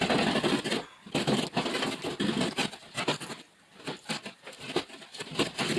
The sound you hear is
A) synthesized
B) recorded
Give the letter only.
B